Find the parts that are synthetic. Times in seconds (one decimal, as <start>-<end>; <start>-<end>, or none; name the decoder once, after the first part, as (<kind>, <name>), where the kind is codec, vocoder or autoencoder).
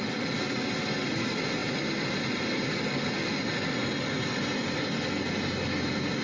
none